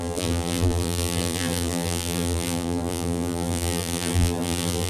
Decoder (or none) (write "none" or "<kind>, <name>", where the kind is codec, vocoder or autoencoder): vocoder, BigVGAN v2